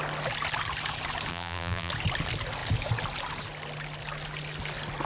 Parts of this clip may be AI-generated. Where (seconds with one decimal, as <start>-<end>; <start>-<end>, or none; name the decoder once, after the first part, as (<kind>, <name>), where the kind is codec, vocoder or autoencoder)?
1.3-1.9 (vocoder, BigVGAN v2)